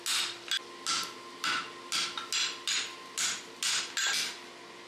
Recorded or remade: recorded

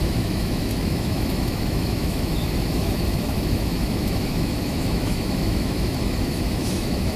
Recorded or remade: remade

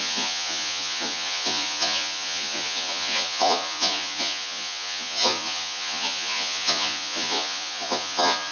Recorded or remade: remade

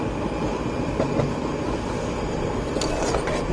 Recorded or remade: recorded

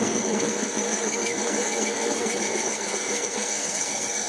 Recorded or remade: remade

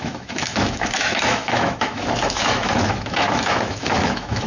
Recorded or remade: remade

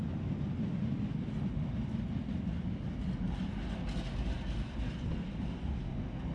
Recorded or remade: recorded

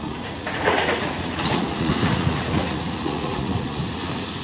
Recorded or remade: remade